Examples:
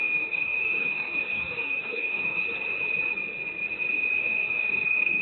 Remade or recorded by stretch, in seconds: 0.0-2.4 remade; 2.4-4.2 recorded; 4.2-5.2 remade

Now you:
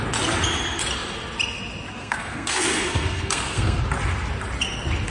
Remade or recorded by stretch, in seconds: 0.0-2.0 recorded; 2.0-3.8 remade; 3.8-5.1 recorded

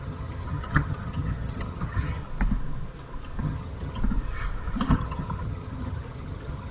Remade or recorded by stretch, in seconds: 0.0-2.2 remade; 2.2-3.4 recorded; 3.4-4.0 remade; 4.0-4.9 recorded; 4.9-6.7 remade